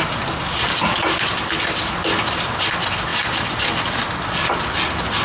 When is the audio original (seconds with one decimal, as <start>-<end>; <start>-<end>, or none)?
0.0-5.2